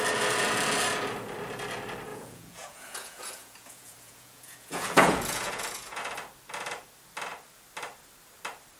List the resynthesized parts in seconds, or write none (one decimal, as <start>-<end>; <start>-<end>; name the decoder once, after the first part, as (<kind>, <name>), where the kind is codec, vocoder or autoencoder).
2.1-6.0 (vocoder, Vocos)